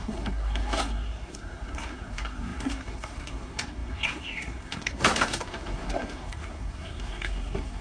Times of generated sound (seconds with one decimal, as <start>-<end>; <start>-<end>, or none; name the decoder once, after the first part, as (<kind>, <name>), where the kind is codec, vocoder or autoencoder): 0.0-7.8 (codec, SNAC)